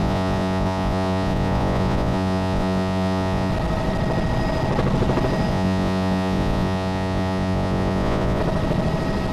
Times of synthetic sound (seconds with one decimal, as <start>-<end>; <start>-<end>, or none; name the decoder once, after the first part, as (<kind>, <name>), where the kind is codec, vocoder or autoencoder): 0.0-3.5 (vocoder, Vocos); 5.5-8.4